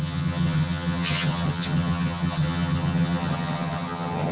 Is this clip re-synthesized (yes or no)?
yes